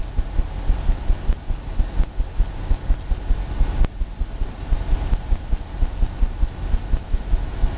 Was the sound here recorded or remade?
recorded